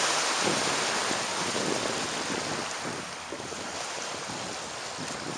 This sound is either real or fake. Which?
real